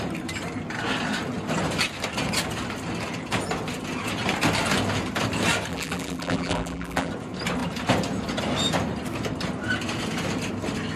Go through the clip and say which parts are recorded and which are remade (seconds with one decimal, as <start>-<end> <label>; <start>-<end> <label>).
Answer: 0.0-5.7 recorded; 5.7-7.1 remade; 7.1-11.0 recorded